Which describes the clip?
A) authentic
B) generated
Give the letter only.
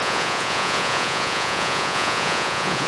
B